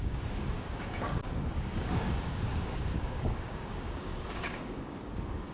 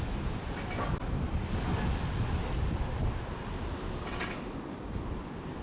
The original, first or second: second